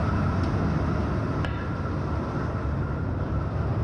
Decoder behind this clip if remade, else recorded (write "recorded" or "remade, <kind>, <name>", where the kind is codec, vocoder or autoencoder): recorded